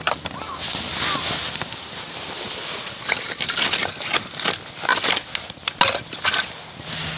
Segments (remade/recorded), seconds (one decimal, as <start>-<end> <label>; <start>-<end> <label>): 0.0-7.2 recorded